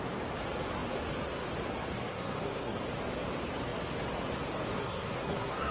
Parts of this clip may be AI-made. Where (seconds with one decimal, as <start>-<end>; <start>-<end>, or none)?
2.1-2.8; 4.7-5.7